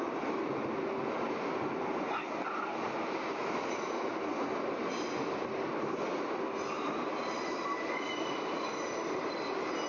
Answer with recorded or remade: recorded